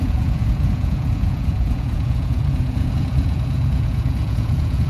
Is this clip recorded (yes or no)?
no